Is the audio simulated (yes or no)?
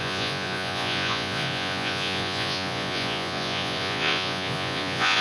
yes